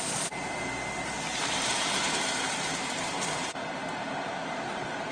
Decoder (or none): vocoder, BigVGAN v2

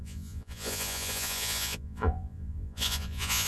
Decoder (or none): vocoder, Vocos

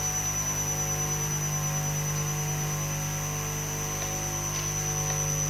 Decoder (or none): none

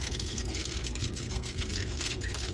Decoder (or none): codec, SNAC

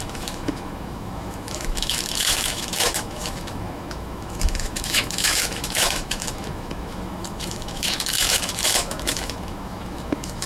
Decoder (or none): autoencoder, DAC-VAE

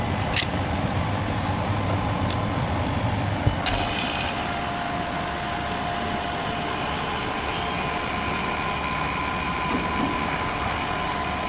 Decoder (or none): none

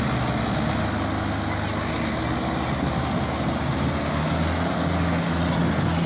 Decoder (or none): none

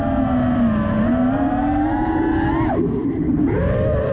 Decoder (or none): none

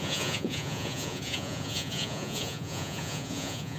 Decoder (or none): vocoder, Vocos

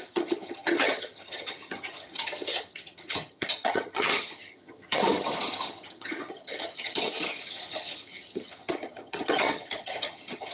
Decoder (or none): vocoder, HiFi-GAN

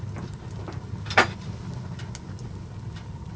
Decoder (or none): none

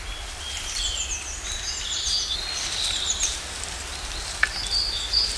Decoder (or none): none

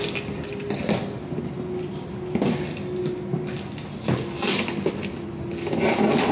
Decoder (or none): none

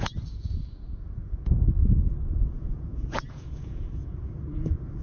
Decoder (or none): vocoder, Vocos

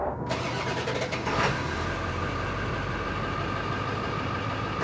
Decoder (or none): none